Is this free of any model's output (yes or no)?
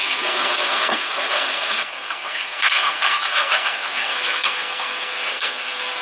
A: no